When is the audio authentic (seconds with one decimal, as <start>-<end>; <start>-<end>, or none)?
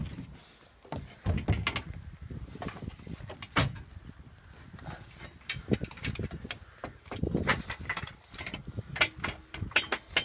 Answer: 0.0-7.5; 8.4-10.2